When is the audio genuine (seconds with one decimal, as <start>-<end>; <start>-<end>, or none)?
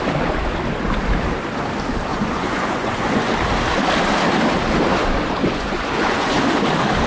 0.0-2.1; 3.3-5.4; 6.4-7.1